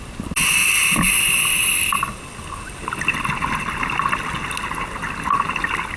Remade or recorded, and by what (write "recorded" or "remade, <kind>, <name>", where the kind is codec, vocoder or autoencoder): recorded